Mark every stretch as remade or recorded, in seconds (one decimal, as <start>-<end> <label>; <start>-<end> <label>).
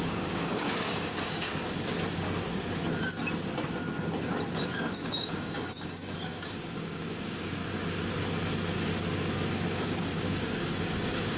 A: 0.0-1.5 remade; 1.5-4.7 recorded; 4.7-7.6 remade; 7.6-9.5 recorded; 9.5-11.4 remade